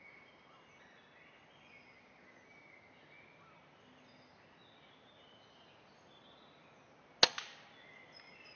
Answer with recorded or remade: recorded